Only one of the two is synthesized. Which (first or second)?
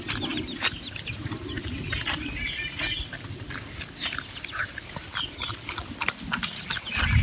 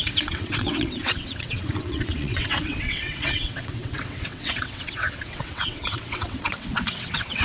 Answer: second